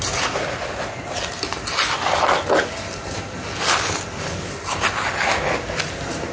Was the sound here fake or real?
real